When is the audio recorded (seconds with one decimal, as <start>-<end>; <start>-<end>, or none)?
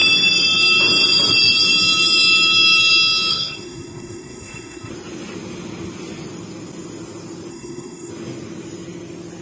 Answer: 0.0-3.3; 4.9-7.5; 8.1-9.4